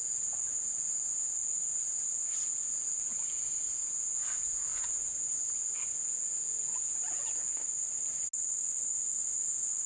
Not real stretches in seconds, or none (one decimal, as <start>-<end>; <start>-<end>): 0.0-7.6